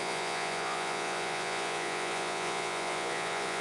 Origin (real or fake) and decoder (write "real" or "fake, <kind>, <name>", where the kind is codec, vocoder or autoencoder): fake, vocoder, Vocos